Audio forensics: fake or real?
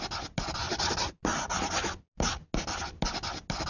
real